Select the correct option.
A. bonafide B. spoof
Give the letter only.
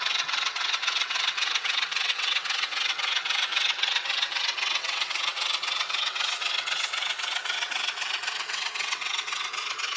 B